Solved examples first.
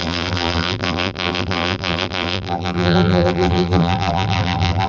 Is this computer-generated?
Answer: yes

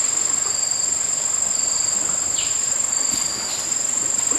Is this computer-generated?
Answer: no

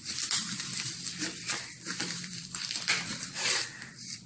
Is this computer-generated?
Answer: yes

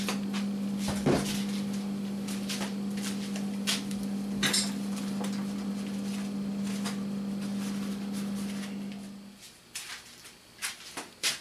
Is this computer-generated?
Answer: no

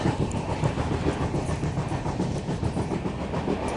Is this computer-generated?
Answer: no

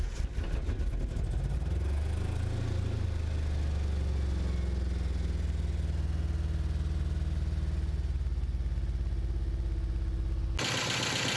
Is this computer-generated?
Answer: no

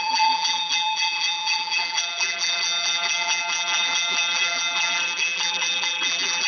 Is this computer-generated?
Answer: yes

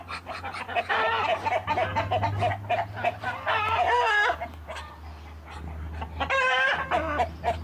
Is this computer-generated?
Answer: yes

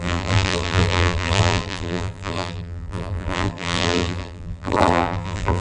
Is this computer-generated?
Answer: yes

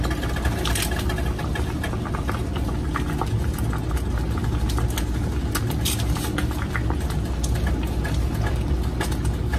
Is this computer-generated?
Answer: no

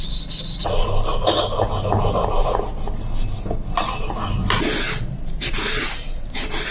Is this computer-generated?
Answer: no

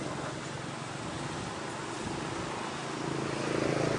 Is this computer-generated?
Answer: no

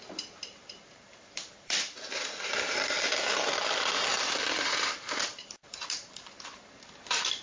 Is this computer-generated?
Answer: yes